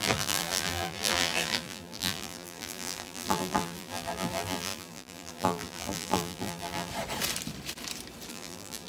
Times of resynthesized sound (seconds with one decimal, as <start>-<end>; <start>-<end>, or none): 0.0-6.9; 8.3-8.9